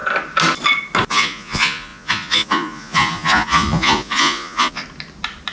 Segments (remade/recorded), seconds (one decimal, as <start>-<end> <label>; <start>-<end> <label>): 0.0-1.1 recorded; 1.1-4.8 remade; 4.8-5.5 recorded